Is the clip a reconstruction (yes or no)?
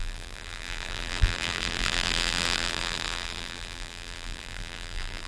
yes